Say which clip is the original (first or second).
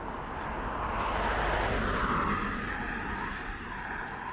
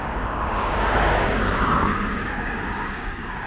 first